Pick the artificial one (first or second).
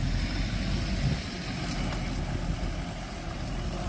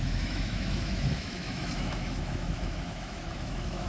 second